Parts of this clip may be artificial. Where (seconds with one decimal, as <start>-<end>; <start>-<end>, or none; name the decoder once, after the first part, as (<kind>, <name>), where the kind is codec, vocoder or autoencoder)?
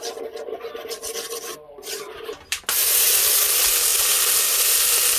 1.5-2.6 (vocoder, BigVGAN v2)